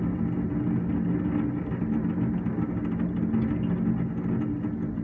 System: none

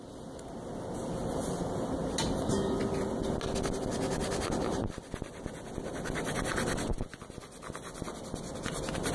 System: none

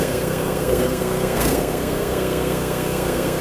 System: codec, SNAC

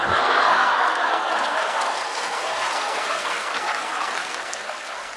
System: codec, SNAC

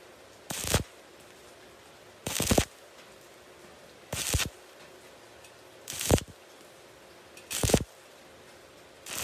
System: none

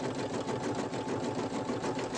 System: none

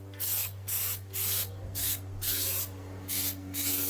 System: codec, SNAC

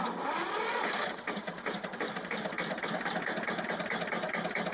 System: none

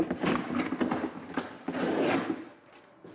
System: none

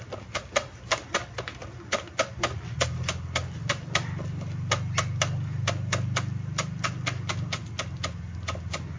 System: none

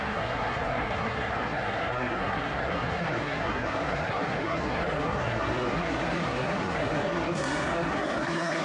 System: codec, SNAC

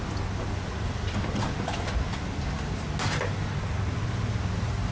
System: none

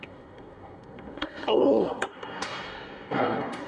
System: codec, SNAC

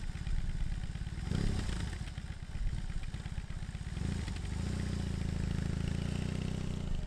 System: none